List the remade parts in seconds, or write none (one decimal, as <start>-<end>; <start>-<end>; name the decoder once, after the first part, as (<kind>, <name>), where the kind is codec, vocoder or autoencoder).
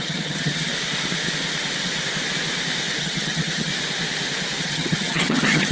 0.0-0.7 (vocoder, HiFi-GAN); 3.0-3.7; 4.6-5.7